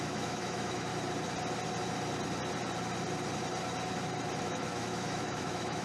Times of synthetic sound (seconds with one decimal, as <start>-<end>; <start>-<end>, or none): 0.0-0.9; 4.4-5.8